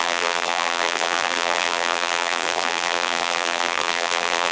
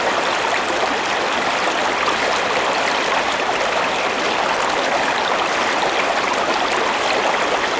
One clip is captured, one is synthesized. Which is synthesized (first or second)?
first